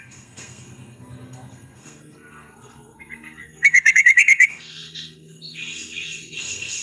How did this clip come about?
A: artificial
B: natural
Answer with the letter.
A